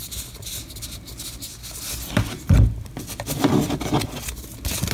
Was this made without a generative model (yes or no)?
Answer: yes